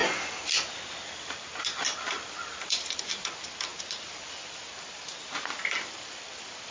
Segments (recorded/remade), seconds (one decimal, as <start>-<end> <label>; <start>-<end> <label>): 0.0-2.3 recorded; 2.3-3.7 remade; 3.7-4.9 recorded; 4.9-6.7 remade